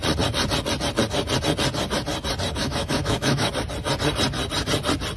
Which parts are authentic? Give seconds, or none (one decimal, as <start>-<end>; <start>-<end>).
0.0-2.6; 3.5-5.2